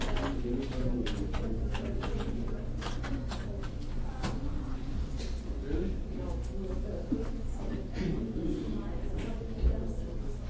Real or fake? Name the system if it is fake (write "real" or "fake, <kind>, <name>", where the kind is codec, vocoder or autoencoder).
real